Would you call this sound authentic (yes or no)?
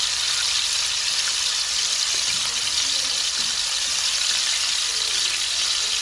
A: yes